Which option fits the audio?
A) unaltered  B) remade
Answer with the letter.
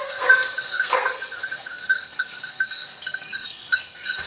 B